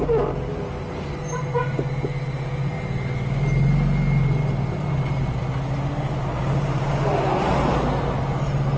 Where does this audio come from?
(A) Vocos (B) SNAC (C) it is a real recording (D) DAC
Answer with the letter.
C